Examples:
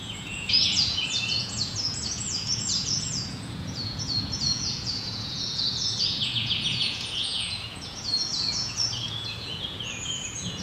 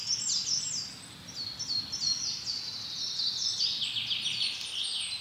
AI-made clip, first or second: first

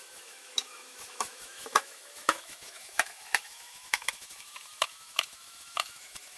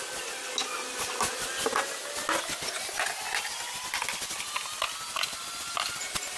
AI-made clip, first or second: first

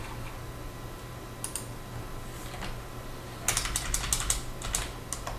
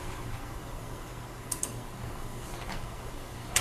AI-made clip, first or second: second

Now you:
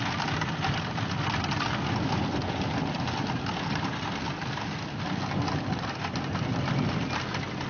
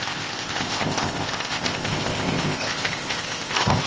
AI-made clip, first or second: second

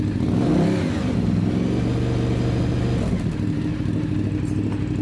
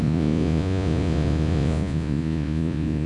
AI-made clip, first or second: second